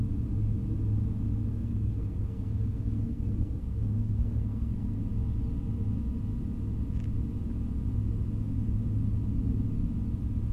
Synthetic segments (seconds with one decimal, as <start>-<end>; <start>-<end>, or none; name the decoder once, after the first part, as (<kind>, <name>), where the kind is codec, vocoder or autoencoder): 1.5-5.0 (codec, SNAC)

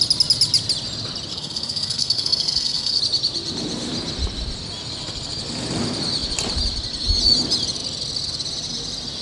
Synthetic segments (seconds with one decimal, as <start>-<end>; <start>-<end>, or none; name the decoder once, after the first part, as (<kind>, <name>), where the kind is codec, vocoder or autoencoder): 1.3-3.0 (codec, SNAC)